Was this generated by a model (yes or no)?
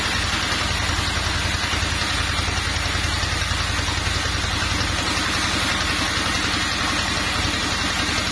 no